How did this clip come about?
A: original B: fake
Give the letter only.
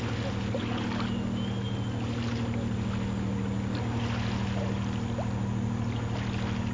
A